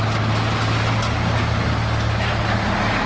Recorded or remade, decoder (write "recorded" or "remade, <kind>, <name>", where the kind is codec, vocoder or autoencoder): recorded